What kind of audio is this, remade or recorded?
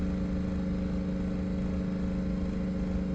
recorded